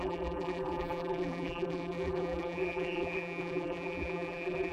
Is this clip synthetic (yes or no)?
yes